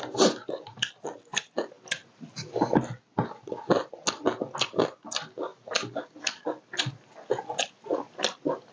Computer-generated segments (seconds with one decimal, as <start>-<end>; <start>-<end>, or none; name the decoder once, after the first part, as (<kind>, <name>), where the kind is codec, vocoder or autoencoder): none